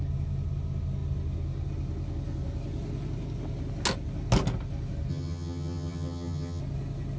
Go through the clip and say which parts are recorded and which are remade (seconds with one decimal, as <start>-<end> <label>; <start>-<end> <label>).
0.0-5.1 recorded; 5.1-6.6 remade; 6.6-7.2 recorded